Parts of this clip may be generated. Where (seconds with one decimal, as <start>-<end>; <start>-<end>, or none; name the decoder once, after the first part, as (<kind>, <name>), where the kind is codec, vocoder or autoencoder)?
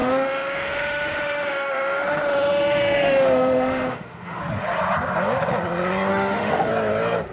0.0-4.4 (autoencoder, DAC-VAE); 6.1-6.7